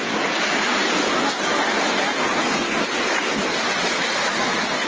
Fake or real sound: real